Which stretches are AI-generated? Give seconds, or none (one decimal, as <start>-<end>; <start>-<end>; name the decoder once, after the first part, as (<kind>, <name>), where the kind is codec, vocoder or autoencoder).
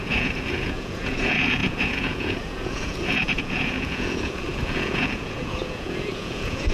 0.0-6.7 (vocoder, Vocos)